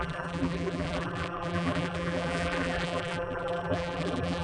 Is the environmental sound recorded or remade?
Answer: remade